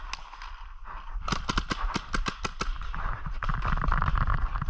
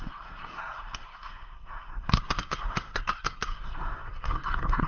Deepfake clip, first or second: second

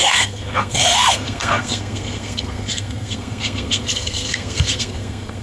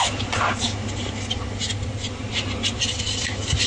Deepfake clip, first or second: first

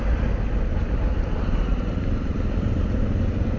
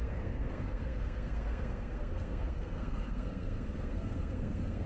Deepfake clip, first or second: second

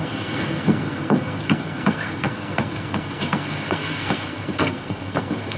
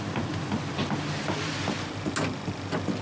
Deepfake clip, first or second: first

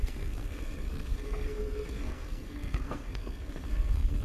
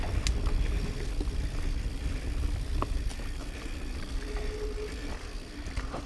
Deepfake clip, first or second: first